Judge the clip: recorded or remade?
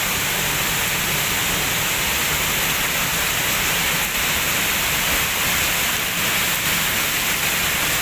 recorded